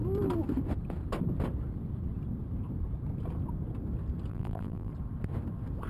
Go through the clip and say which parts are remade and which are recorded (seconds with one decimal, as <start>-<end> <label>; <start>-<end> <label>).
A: 0.0-4.3 recorded; 4.3-4.9 remade; 4.9-5.9 recorded